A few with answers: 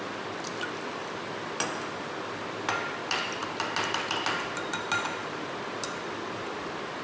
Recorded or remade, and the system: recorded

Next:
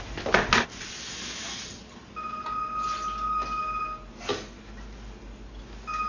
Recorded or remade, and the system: recorded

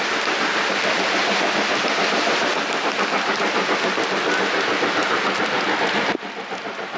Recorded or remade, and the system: recorded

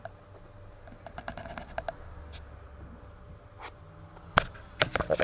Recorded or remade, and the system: recorded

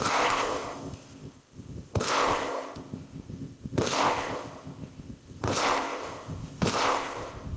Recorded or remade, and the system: remade, codec, ZipCodec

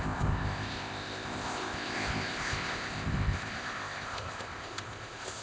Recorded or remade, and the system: remade, codec, ZipCodec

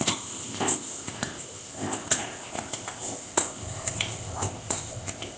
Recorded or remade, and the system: remade, codec, ZipCodec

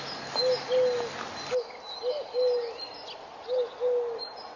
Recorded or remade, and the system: recorded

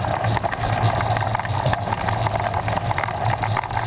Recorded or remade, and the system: recorded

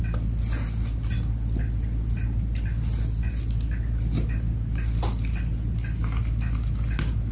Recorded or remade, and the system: recorded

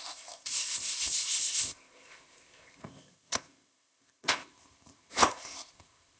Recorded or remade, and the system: remade, codec, ZipCodec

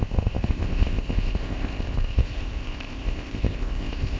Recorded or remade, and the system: remade, codec, ZipCodec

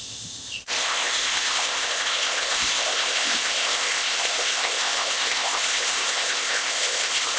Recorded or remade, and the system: remade, codec, ZipCodec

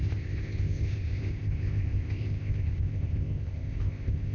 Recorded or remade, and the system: remade, codec, ZipCodec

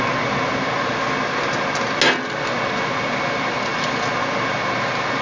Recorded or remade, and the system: recorded